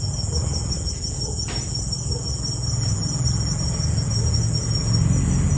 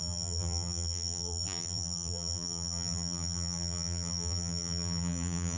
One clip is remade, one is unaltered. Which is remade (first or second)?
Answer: second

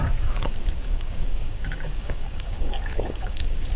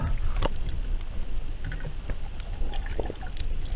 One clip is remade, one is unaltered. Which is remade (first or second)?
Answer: first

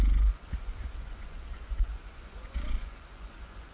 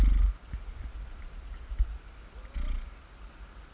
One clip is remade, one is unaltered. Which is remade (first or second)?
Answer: first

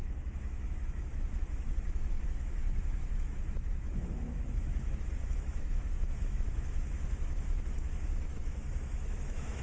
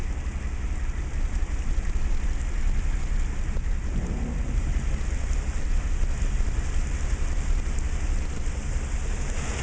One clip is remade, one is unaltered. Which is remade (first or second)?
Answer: first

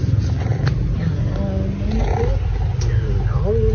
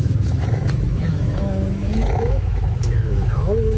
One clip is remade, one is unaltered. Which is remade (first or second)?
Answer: second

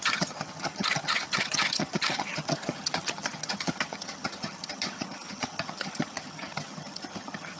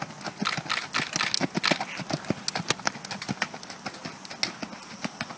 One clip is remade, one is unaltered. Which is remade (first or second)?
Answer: first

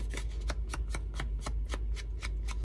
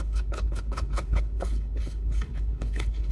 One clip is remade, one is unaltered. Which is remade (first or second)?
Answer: second